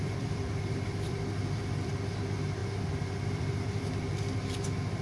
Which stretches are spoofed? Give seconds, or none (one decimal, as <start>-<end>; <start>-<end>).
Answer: 0.0-1.9; 2.6-3.9